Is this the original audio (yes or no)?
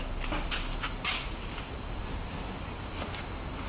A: yes